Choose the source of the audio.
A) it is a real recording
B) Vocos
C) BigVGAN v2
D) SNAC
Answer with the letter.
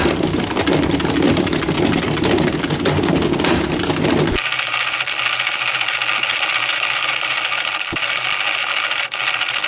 A